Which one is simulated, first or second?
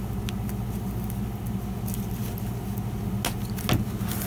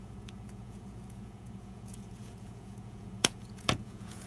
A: second